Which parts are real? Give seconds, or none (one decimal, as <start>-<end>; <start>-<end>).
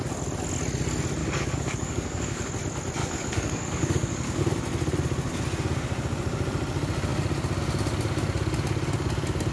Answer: 0.0-1.2; 2.5-3.0; 4.4-9.5